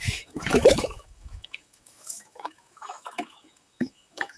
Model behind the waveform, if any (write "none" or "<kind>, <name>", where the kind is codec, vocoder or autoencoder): autoencoder, DAC-VAE